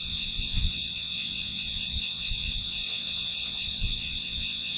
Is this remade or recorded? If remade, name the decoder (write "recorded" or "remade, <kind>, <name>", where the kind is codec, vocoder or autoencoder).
remade, vocoder, WaveNeXt